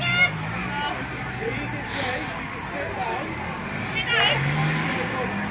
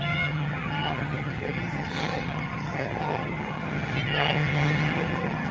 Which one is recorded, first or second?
first